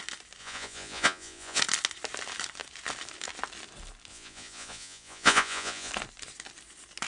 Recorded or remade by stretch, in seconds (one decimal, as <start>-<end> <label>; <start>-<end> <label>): 0.0-0.4 recorded; 0.4-1.6 remade; 1.6-4.1 recorded; 4.1-5.9 remade; 5.9-7.1 recorded